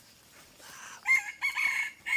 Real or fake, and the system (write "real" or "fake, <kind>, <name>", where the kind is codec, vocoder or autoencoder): fake, vocoder, BigVGAN v2